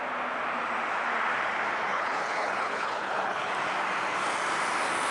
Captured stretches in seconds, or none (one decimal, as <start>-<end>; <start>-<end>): 0.0-1.9; 3.5-5.1